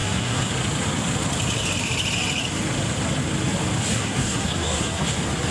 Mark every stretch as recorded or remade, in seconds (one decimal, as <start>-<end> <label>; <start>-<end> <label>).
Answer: 0.0-0.5 remade; 0.5-3.9 recorded; 3.9-5.0 remade; 5.0-5.5 recorded

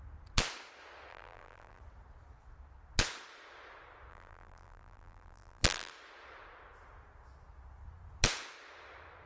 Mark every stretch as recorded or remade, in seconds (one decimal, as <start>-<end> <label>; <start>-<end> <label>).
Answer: 0.0-1.1 recorded; 1.1-1.8 remade; 1.8-4.1 recorded; 4.1-5.9 remade; 5.9-9.3 recorded

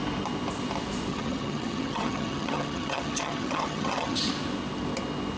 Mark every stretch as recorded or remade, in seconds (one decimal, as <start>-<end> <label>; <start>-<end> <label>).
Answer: 0.0-1.1 recorded; 1.1-4.3 remade; 4.3-5.4 recorded